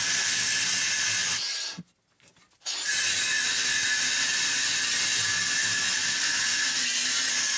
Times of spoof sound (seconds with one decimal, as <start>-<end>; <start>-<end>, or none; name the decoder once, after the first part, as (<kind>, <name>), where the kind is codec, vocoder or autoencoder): none